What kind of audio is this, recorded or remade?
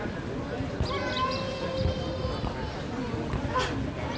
recorded